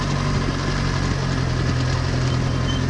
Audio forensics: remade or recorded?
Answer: recorded